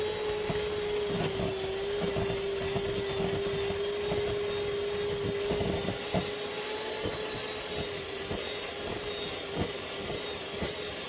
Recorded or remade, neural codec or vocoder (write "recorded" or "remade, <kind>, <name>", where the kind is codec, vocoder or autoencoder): recorded